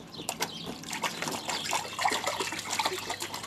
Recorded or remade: recorded